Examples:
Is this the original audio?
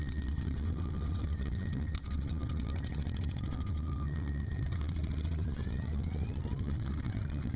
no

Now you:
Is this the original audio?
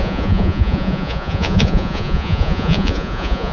no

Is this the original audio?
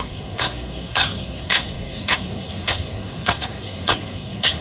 no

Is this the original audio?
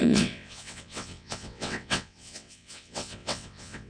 no